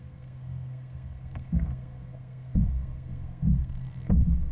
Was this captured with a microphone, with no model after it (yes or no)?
no